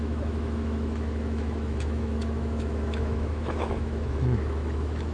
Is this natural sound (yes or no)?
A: no